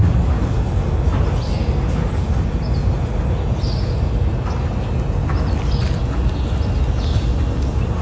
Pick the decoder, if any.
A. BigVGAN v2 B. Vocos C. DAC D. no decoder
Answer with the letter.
D